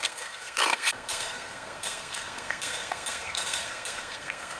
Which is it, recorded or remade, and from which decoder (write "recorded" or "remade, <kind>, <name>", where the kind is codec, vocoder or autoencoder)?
remade, codec, SNAC